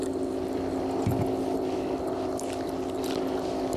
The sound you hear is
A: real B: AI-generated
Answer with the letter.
A